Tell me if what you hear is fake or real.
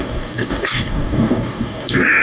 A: fake